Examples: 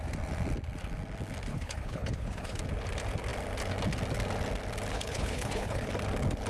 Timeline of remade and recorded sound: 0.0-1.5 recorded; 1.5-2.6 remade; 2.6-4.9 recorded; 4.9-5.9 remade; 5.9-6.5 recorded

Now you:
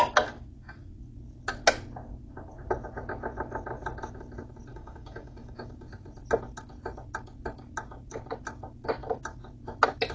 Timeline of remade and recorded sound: 0.0-4.7 recorded; 4.7-5.7 remade; 5.7-10.1 recorded